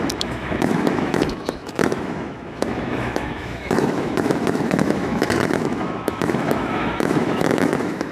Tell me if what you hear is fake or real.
fake